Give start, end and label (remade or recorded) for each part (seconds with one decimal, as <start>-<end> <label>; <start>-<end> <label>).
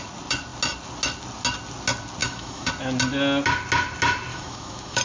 0.0-2.2 recorded; 2.2-2.7 remade; 2.7-4.3 recorded; 4.3-5.0 remade